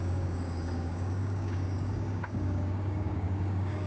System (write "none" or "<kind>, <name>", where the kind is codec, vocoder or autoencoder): codec, DAC